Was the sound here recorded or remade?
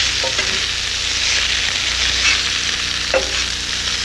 recorded